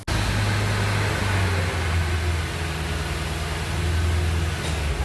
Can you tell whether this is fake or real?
real